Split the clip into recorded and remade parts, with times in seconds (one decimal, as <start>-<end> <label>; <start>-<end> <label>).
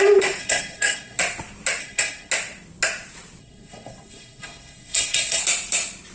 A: 0.0-0.4 recorded; 0.4-1.2 remade; 1.2-1.8 recorded; 1.8-2.3 remade; 2.3-3.4 recorded; 3.4-5.4 remade; 5.4-6.1 recorded